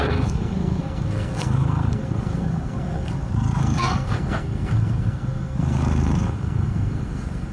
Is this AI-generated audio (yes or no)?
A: yes